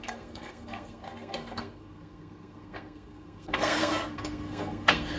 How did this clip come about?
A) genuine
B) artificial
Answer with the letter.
B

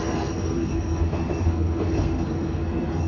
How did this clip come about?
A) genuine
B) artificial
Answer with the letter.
B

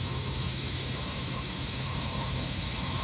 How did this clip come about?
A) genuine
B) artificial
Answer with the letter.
B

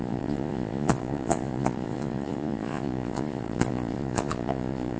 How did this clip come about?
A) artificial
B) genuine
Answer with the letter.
A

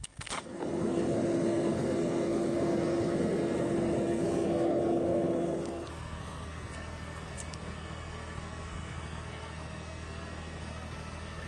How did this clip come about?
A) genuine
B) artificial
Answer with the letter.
B